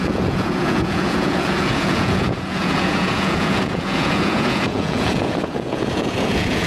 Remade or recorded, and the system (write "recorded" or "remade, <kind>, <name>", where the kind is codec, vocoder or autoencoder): remade, vocoder, Vocos